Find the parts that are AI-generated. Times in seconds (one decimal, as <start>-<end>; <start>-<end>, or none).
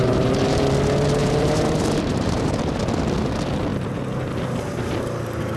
0.0-0.6; 1.2-2.6